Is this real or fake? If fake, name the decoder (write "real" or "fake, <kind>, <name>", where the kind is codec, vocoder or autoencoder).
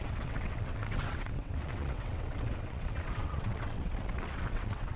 fake, vocoder, WaveNeXt